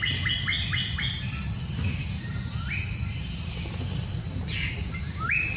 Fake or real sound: real